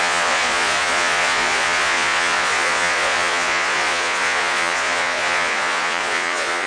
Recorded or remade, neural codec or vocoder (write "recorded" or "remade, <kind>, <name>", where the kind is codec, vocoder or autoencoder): remade, vocoder, Vocos